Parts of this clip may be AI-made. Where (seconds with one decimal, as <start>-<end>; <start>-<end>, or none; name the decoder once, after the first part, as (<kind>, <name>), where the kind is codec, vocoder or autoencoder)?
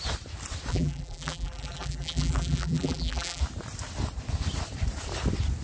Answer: 0.7-3.4 (vocoder, BigVGAN v2)